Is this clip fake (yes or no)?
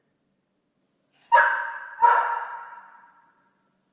no